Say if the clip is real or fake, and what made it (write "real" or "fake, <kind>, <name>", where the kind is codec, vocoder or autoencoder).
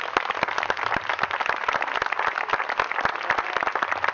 real